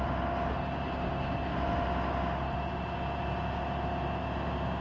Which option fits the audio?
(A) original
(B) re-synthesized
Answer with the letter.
A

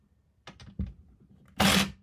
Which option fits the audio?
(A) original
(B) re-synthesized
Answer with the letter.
A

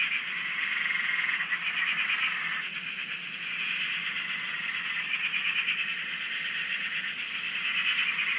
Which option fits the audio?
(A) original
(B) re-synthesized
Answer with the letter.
A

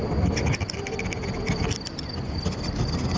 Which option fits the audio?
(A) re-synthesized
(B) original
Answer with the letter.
B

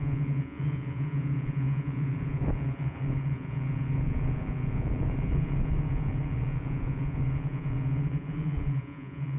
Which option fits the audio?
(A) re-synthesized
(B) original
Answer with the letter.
A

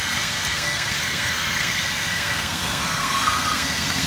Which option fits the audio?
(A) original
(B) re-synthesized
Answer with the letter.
B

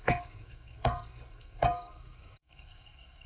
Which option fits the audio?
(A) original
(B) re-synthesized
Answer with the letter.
B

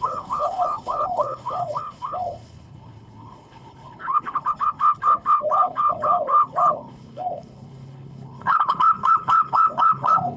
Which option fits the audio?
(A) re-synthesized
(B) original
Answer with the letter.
A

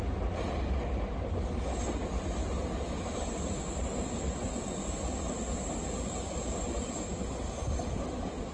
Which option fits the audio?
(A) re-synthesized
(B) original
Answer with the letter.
B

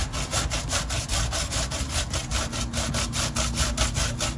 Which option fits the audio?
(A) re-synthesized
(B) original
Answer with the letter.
B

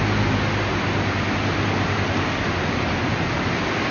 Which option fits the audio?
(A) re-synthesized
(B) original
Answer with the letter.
B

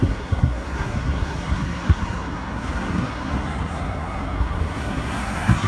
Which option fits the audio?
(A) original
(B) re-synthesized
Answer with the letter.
B